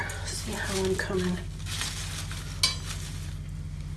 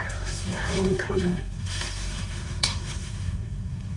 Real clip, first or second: first